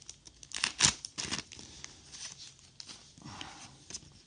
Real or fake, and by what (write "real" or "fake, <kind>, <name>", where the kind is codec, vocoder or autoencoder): real